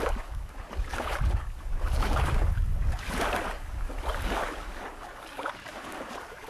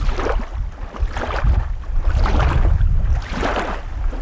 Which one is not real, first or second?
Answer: first